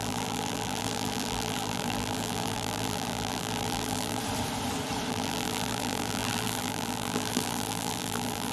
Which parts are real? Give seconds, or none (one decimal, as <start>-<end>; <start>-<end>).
4.2-5.1